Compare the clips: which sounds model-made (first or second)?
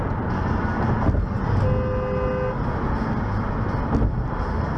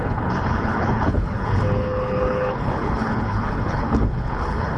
second